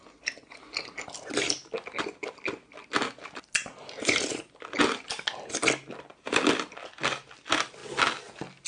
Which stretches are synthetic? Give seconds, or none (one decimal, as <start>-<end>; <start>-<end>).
none